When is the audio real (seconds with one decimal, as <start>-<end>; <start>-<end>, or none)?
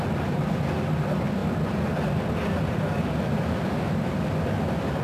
0.0-5.0